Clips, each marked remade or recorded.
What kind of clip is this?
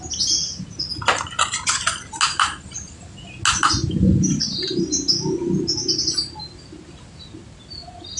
recorded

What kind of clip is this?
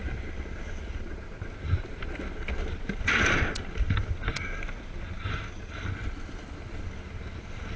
recorded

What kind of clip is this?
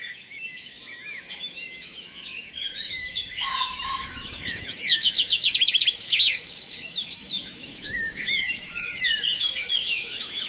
remade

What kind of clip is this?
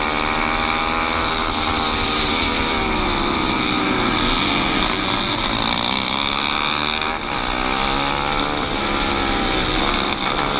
recorded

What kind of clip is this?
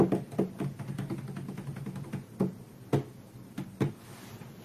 recorded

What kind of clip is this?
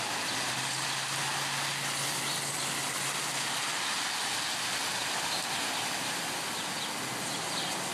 recorded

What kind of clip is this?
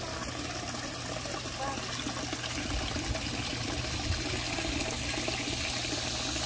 recorded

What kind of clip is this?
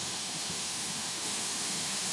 remade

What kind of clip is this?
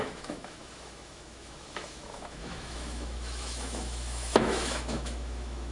remade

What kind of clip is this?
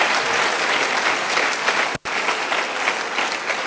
recorded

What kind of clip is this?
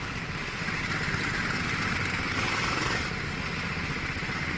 recorded